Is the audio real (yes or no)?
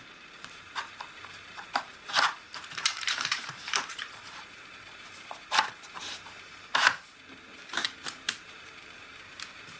no